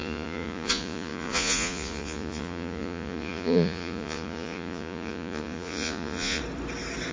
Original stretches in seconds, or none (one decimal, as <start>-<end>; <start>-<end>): 6.4-7.1